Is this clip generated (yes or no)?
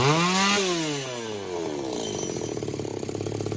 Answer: no